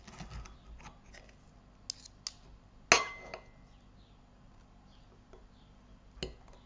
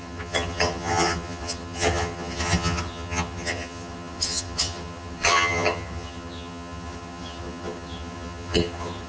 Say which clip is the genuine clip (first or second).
first